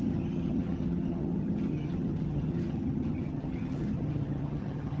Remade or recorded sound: remade